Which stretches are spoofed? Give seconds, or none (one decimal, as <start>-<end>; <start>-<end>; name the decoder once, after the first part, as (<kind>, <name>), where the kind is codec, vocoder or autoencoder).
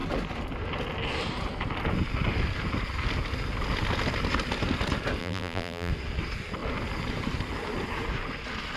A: 5.2-5.9 (vocoder, BigVGAN v2)